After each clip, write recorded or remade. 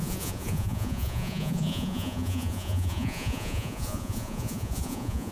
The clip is remade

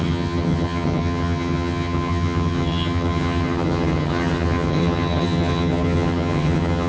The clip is remade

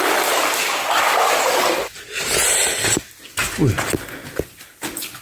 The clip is recorded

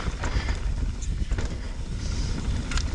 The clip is remade